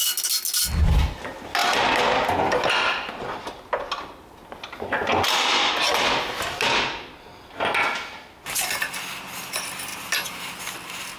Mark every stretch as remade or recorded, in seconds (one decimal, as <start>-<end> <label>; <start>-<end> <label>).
0.0-9.9 recorded; 9.9-10.6 remade; 10.6-11.2 recorded

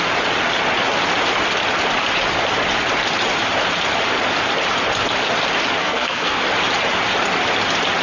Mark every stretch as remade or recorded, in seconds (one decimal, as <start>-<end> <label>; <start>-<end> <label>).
0.0-5.8 recorded; 5.8-6.4 remade; 6.4-8.0 recorded